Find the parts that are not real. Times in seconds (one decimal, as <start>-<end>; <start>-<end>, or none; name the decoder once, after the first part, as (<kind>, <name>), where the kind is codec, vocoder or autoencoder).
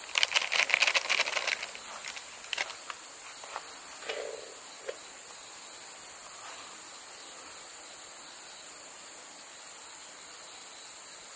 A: none